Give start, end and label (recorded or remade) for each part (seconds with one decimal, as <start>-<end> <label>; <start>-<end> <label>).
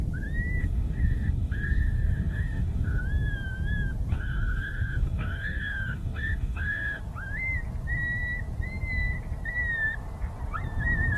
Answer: 0.0-0.6 recorded; 0.6-3.0 remade; 3.0-4.1 recorded; 4.1-7.0 remade; 7.0-11.2 recorded